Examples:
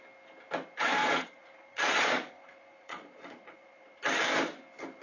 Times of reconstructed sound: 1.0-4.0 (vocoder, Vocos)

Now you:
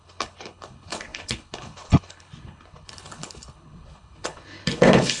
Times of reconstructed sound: 0.0-5.2 (codec, HILCodec)

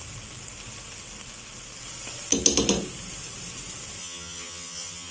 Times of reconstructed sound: 4.0-5.1 (vocoder, HiFi-GAN)